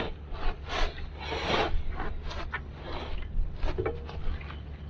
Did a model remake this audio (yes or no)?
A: no